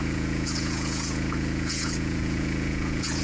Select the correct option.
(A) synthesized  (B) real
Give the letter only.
A